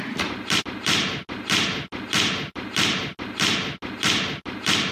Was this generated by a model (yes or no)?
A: no